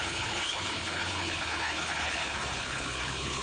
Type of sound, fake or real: fake